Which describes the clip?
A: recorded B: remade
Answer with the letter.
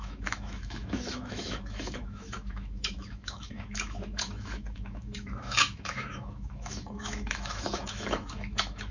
B